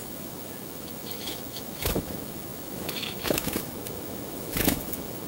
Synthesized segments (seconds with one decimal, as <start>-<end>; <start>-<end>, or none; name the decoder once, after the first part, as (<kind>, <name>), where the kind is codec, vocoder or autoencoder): 0.0-5.3 (autoencoder, DAC-VAE)